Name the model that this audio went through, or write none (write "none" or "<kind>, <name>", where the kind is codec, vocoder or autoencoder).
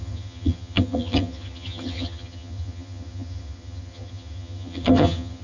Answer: vocoder, HiFi-GAN